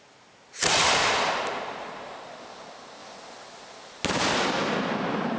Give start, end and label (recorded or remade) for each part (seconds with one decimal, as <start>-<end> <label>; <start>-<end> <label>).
0.0-0.6 recorded; 0.6-2.2 remade; 2.2-5.4 recorded